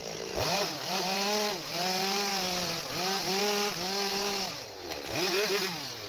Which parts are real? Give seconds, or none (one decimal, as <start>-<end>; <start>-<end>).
0.8-4.1; 5.0-6.1